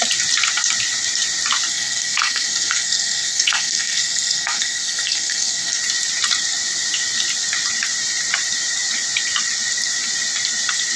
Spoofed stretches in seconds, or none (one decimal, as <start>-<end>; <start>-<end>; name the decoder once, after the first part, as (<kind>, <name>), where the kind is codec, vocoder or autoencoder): 1.7-5.8 (codec, SNAC)